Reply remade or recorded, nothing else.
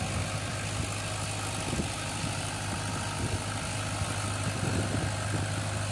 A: recorded